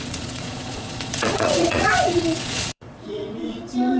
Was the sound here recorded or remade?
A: remade